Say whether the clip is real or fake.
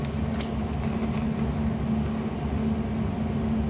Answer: real